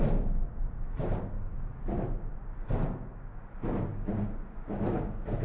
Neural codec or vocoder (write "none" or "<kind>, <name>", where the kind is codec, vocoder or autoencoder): none